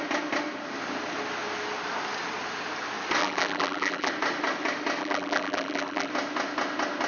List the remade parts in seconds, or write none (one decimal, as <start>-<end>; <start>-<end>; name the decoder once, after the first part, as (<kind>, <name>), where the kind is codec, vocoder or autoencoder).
3.2-4.1 (vocoder, BigVGAN v2); 5.0-6.1